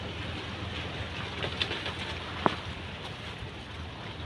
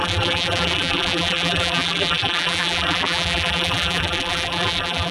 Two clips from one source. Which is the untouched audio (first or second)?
first